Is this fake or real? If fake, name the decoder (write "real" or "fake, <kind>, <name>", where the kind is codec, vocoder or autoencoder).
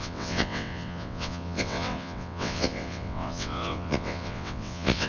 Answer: fake, vocoder, WaveNeXt